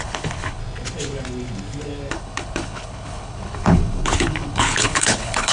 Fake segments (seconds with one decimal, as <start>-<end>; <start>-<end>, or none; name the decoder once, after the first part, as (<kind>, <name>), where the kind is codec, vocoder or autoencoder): 0.0-0.6 (codec, HILCodec); 2.1-5.5